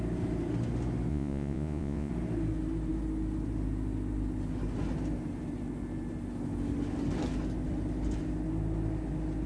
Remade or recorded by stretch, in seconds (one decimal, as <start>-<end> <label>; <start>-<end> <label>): 0.0-1.1 recorded; 1.1-2.1 remade; 2.1-9.5 recorded

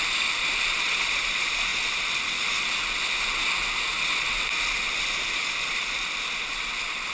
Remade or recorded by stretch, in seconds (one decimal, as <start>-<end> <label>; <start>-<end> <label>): 0.0-7.1 recorded

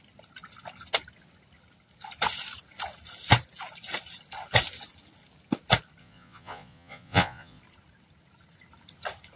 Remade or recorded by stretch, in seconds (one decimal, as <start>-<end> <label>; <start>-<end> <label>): 0.0-6.0 recorded; 6.0-7.6 remade; 7.6-9.4 recorded

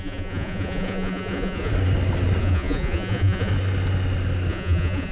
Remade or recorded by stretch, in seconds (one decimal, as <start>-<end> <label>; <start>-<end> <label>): 0.0-1.7 remade; 1.7-2.4 recorded; 2.4-3.5 remade; 3.5-4.5 recorded; 4.5-5.1 remade

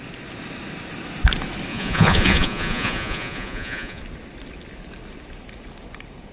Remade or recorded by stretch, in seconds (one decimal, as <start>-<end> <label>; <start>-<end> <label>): 0.0-1.7 recorded; 1.7-4.0 remade; 4.0-6.3 recorded

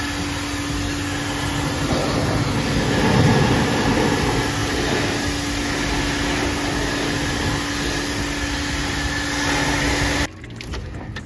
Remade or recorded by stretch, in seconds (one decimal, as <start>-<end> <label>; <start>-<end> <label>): 0.0-11.3 recorded

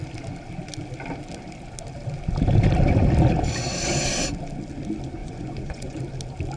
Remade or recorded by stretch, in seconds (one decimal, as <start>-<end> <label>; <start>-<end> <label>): 0.0-5.2 recorded; 5.2-6.0 remade; 6.0-6.6 recorded

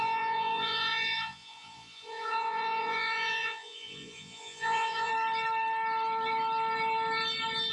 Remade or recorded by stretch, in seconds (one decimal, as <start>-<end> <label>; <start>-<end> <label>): 0.0-5.1 remade; 5.1-7.7 recorded